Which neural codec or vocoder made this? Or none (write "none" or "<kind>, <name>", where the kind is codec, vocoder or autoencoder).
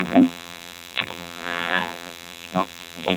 vocoder, BigVGAN v2